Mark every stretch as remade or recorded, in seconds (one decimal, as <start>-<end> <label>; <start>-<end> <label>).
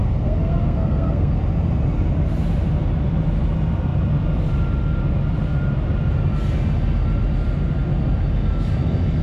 0.0-1.4 remade; 1.4-9.2 recorded